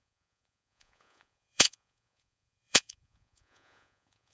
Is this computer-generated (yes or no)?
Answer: yes